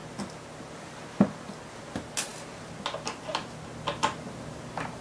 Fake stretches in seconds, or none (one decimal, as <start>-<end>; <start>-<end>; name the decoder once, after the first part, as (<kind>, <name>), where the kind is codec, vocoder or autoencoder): none